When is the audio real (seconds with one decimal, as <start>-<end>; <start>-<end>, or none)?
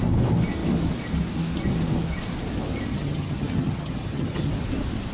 0.0-2.9; 4.5-5.1